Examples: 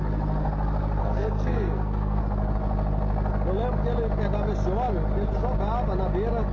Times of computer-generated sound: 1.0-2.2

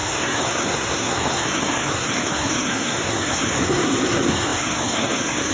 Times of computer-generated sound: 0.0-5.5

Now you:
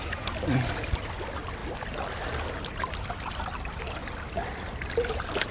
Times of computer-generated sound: none

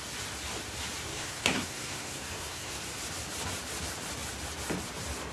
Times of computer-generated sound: 1.1-2.8

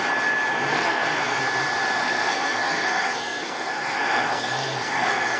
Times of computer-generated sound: 0.7-1.4; 2.0-5.4